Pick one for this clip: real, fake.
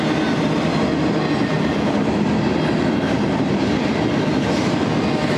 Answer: real